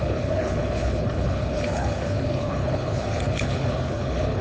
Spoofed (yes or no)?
yes